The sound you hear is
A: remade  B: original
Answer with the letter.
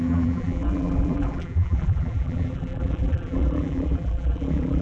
A